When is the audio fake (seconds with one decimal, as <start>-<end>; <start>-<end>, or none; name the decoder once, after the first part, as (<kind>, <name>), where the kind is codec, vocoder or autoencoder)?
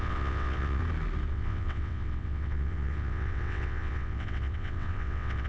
0.0-0.8 (vocoder, WaveNeXt); 1.3-5.5